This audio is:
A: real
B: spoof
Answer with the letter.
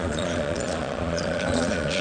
B